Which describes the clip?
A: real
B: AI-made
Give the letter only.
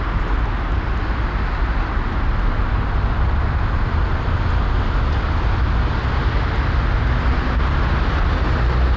A